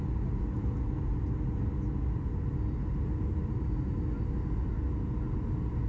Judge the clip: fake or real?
real